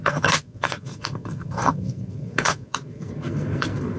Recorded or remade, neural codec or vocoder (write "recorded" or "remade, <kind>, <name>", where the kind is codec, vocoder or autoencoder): remade, codec, SNAC